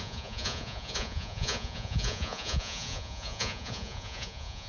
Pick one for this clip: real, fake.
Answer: fake